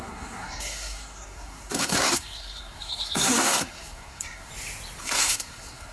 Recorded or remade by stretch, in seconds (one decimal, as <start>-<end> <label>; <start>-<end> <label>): 0.0-4.5 remade; 4.5-5.0 recorded; 5.0-5.9 remade